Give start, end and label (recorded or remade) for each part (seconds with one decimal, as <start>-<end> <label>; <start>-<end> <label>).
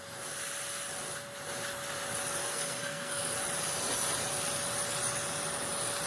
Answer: 0.0-2.4 recorded; 2.4-3.2 remade; 3.2-6.1 recorded